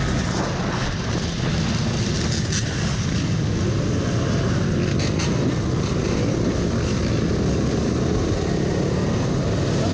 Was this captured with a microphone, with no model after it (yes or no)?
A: yes